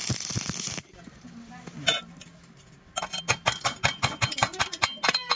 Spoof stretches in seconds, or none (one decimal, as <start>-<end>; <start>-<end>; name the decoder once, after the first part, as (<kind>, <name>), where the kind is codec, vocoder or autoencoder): none